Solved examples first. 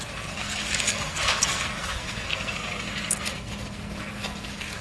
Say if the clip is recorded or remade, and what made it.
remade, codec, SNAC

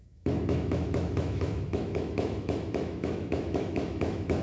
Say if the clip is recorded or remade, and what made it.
remade, autoencoder, DAC-VAE